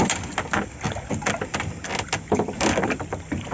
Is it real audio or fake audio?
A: real